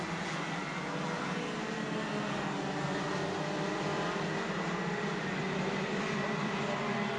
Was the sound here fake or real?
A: real